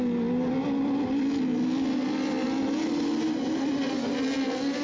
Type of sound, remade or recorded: recorded